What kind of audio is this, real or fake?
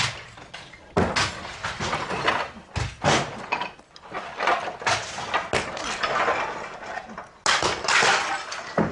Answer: real